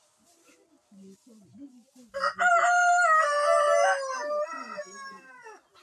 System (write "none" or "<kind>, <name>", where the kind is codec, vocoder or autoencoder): none